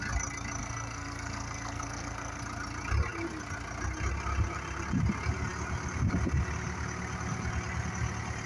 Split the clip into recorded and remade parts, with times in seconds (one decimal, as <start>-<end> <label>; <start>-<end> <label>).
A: 0.0-0.6 recorded; 0.6-2.4 remade; 2.4-8.5 recorded